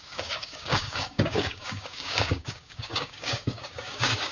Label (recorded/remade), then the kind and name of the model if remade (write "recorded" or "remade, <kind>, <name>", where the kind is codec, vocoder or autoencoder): remade, codec, DAC